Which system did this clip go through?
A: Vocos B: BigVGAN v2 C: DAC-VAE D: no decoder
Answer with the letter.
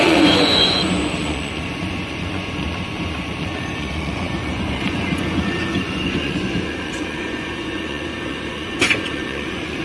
A